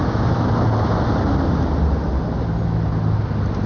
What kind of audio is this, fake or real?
real